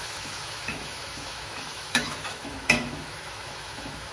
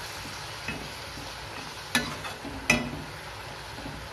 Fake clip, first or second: first